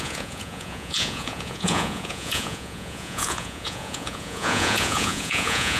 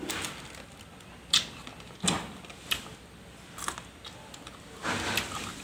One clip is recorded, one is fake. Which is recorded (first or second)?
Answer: second